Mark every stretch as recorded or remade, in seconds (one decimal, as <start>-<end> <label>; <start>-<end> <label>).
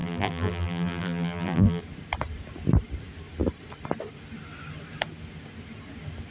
0.0-1.8 remade; 1.8-6.3 recorded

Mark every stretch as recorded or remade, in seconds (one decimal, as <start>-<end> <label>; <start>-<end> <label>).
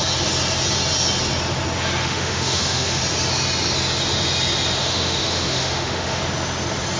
0.0-2.0 recorded; 2.0-3.0 remade; 3.0-4.8 recorded; 4.8-6.2 remade; 6.2-7.0 recorded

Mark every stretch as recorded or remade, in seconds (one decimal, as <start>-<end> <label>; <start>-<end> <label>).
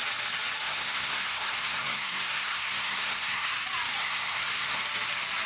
0.0-0.6 recorded; 0.6-3.5 remade; 3.5-4.0 recorded; 4.0-4.8 remade; 4.8-5.5 recorded